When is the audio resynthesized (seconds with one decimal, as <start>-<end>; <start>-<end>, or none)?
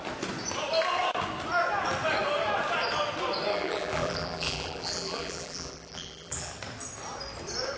3.5-6.5